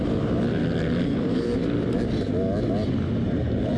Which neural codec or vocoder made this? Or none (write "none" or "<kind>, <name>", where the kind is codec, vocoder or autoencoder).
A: none